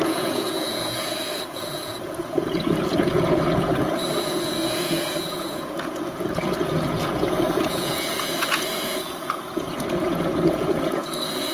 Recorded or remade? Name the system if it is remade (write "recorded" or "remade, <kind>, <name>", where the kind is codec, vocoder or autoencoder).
remade, vocoder, Vocos